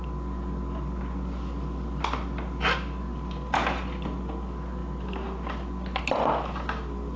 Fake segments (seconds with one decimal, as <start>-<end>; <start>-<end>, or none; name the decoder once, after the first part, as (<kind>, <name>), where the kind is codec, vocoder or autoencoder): none